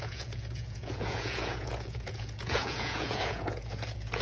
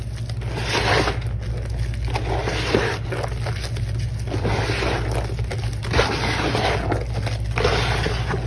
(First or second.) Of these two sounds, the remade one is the first